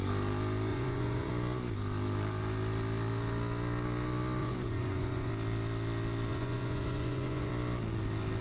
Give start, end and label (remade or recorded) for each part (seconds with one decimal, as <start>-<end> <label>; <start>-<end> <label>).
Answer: 0.0-0.7 recorded; 0.7-1.3 remade; 1.3-4.4 recorded; 4.4-5.3 remade; 5.3-6.3 recorded; 6.3-7.5 remade; 7.5-8.4 recorded